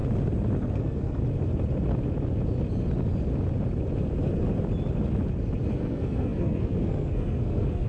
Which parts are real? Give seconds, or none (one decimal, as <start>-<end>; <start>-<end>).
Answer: 0.0-0.6; 1.2-5.7